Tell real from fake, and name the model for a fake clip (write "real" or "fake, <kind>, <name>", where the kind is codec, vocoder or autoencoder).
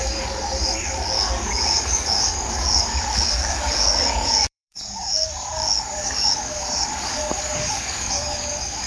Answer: fake, codec, DAC